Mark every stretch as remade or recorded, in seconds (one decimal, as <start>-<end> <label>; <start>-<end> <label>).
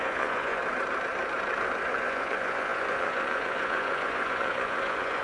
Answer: 0.0-0.6 remade; 0.6-1.9 recorded; 1.9-5.2 remade